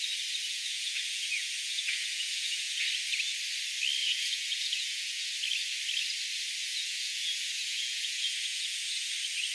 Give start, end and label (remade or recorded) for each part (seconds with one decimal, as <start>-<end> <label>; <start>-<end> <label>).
0.0-0.5 recorded; 0.5-2.8 remade; 2.8-4.0 recorded; 4.0-5.3 remade; 5.3-6.6 recorded; 6.6-9.1 remade; 9.1-9.5 recorded